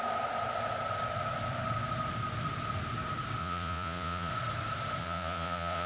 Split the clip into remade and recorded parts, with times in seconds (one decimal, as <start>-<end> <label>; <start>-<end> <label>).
0.0-3.4 recorded; 3.4-4.3 remade; 4.3-5.0 recorded; 5.0-5.9 remade